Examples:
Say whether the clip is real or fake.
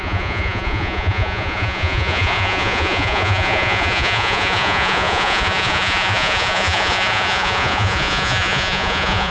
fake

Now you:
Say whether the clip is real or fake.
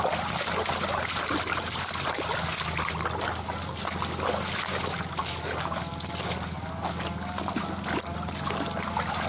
real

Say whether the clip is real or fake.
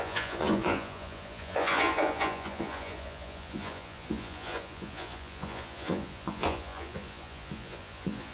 fake